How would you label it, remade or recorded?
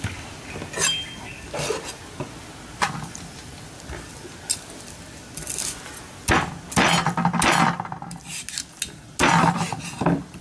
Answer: recorded